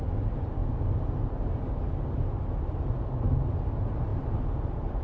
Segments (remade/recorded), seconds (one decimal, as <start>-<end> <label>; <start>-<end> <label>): 0.0-4.1 recorded; 4.1-5.0 remade